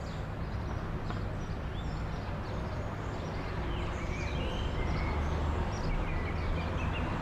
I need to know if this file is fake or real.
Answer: real